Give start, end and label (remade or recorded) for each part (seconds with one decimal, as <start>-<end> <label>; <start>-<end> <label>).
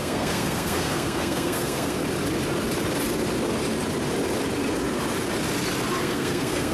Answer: 0.0-2.0 remade; 2.0-6.0 recorded; 6.0-6.7 remade